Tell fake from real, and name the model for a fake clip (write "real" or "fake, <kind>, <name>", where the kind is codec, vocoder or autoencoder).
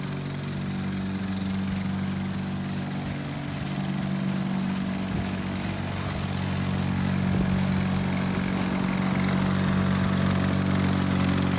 real